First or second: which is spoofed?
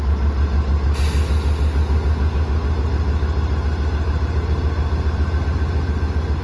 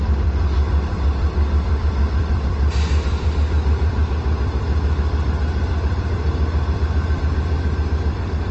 second